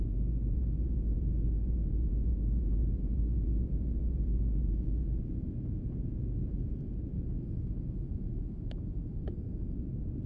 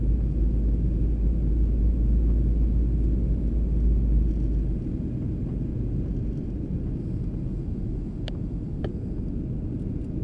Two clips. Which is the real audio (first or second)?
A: second